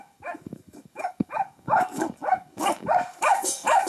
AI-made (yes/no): yes